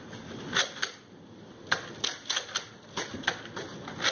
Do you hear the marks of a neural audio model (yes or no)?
no